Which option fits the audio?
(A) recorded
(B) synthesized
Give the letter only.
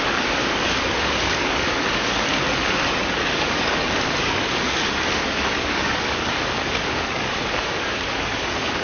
B